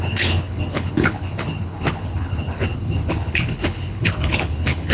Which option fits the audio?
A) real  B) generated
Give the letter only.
B